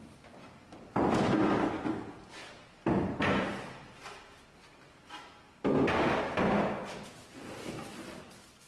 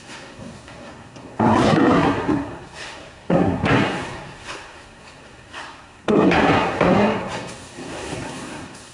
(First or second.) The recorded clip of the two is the first